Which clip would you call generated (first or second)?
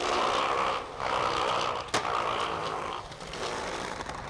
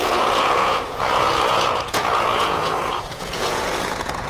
second